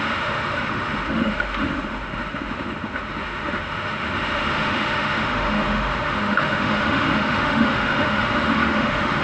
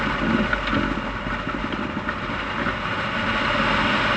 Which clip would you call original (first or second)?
second